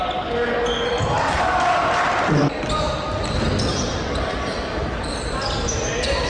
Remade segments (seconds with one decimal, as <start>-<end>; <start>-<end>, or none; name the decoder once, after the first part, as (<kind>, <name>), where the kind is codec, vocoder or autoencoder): 0.9-4.0 (vocoder, BigVGAN v2); 4.8-5.4